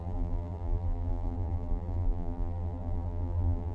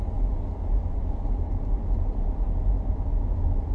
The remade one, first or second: first